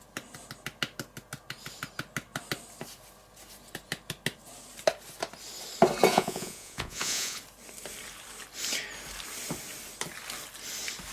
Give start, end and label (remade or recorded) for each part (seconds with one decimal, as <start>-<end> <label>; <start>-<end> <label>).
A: 0.0-6.1 recorded; 6.1-7.4 remade; 7.4-11.1 recorded